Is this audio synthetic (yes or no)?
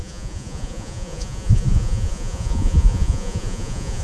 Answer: yes